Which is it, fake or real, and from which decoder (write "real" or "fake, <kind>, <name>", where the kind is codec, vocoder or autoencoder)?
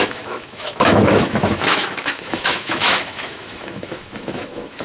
fake, autoencoder, DAC-VAE